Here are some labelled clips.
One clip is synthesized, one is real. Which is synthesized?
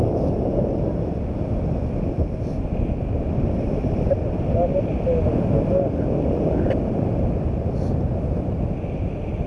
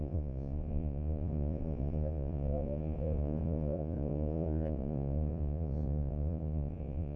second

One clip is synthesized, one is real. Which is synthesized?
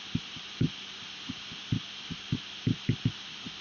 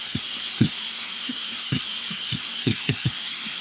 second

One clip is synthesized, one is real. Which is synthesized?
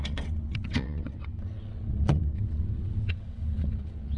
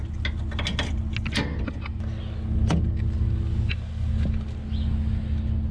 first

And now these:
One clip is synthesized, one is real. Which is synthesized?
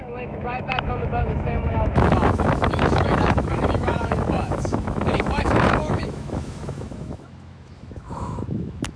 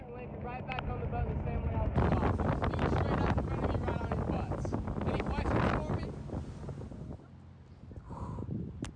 first